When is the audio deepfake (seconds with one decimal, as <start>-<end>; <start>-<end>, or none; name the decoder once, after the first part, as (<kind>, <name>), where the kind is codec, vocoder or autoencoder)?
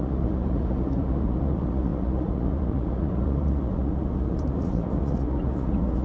0.0-6.0 (vocoder, Vocos)